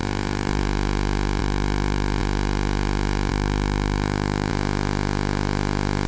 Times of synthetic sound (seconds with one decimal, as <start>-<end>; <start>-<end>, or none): 0.0-0.6; 1.4-2.2; 3.3-4.5